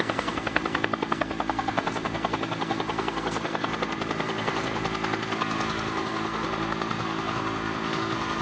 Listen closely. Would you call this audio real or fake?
fake